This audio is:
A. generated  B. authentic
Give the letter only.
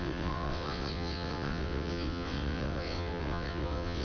A